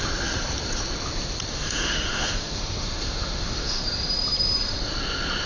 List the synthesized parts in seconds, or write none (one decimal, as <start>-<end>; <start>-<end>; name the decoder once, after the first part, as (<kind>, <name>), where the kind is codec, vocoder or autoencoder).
1.5-3.8 (autoencoder, DAC-VAE)